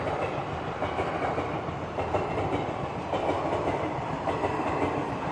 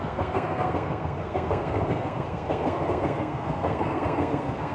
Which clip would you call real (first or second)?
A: first